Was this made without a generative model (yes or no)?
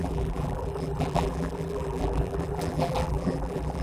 no